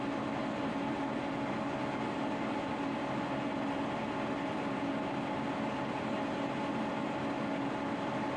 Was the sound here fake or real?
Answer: real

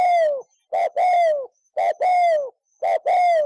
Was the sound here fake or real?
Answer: real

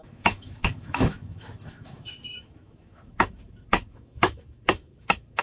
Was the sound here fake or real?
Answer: fake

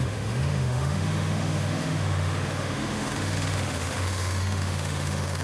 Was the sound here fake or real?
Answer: fake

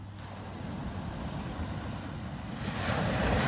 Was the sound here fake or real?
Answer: real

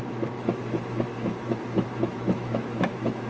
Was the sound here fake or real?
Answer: fake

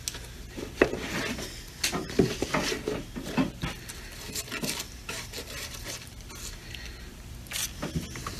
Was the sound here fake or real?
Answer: real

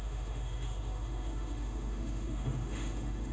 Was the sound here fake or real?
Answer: fake